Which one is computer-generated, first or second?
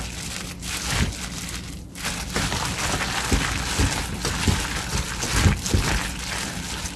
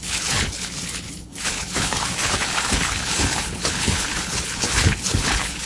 second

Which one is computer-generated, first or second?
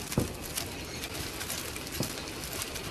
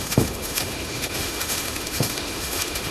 second